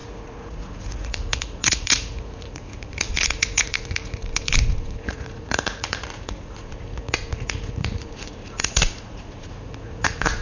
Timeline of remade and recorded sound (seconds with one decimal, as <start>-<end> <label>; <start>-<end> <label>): 0.0-10.4 remade